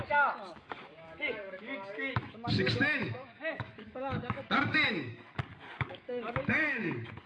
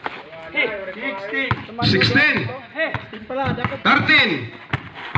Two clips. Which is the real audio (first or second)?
second